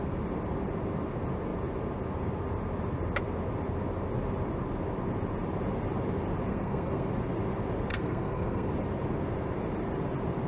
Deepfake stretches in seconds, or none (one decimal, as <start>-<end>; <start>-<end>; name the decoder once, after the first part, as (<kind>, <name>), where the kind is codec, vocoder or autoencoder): 6.5-7.1 (codec, SNAC); 7.9-8.7